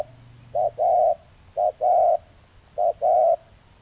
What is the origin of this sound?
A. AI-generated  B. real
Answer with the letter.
B